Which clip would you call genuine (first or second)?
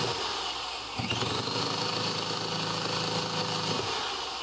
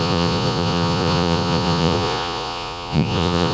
first